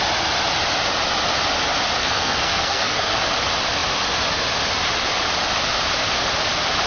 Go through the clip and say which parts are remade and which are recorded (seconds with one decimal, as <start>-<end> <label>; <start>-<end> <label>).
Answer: 0.0-2.0 recorded; 2.0-3.2 remade; 3.2-6.9 recorded